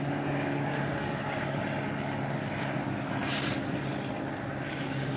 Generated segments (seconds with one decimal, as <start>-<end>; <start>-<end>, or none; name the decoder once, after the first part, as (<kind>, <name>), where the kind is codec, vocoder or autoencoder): 0.0-1.6 (codec, DAC); 4.7-5.2